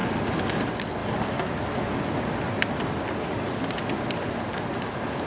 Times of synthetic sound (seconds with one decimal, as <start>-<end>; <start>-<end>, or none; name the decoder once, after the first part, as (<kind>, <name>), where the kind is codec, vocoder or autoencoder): none